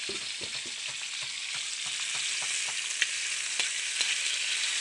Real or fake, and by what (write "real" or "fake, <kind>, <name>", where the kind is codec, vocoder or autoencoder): real